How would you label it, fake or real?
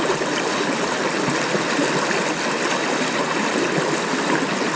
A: real